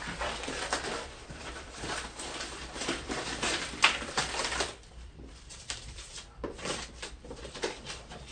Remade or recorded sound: remade